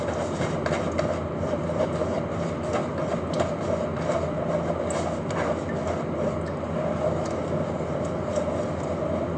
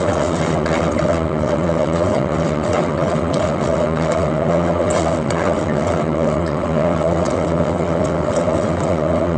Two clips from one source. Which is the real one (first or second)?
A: first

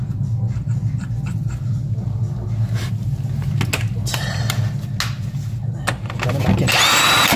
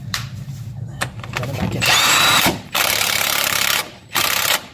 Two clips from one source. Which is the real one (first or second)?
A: first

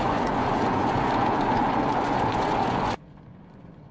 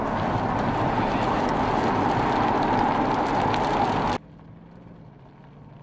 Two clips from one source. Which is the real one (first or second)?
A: second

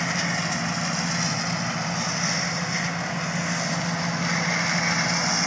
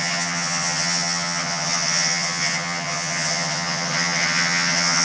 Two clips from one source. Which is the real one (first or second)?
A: first